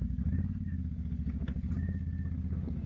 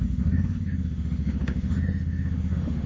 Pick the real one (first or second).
first